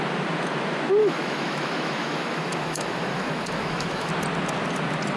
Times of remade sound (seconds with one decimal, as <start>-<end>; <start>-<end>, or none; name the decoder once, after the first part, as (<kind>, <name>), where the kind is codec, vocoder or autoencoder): 1.0-4.1 (autoencoder, DAC-VAE)